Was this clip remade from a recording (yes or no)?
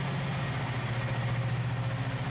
no